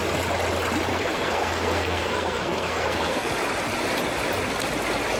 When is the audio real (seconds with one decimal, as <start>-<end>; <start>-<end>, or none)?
0.0-0.9; 3.3-5.2

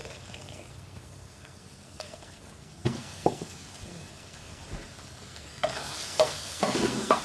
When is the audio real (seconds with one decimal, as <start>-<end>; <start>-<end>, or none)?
none

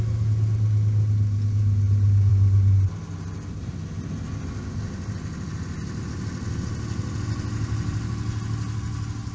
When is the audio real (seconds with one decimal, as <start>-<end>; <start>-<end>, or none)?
0.0-9.3

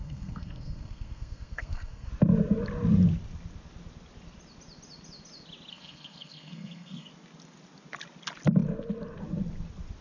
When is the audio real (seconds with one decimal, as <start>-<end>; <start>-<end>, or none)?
2.1-5.7; 7.1-10.0

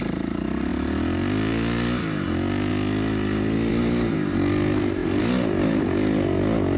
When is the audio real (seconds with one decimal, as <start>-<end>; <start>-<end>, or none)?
0.0-6.8

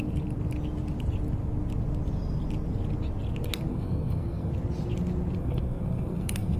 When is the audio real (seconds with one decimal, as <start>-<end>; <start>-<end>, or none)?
0.0-3.7; 4.5-5.4

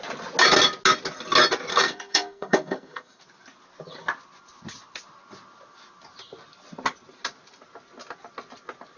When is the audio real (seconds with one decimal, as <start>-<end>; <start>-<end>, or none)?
0.0-1.7; 3.2-9.0

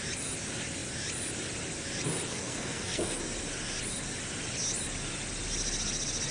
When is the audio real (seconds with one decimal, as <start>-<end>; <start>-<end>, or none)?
0.0-2.3; 3.2-6.3